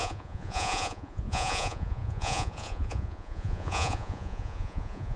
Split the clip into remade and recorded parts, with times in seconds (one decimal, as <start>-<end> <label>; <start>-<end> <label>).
0.0-5.2 remade